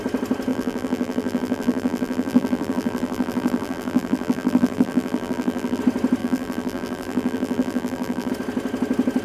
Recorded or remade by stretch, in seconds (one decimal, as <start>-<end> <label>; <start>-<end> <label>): 0.0-0.5 recorded; 0.5-5.8 remade; 5.8-6.2 recorded; 6.2-8.3 remade; 8.3-9.2 recorded